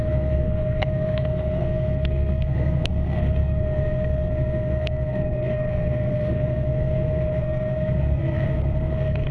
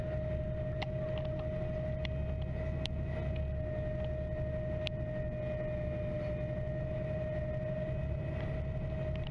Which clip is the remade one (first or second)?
first